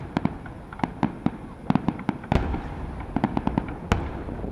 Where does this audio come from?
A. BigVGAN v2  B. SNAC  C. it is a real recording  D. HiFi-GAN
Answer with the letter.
C